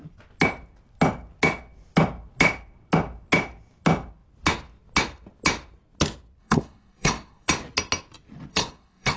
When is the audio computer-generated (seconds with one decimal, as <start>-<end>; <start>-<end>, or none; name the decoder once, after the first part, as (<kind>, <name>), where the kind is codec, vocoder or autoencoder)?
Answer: 6.4-7.5 (codec, HILCodec); 8.5-9.2